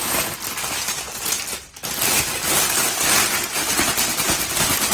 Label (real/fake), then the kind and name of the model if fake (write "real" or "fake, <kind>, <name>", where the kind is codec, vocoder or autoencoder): real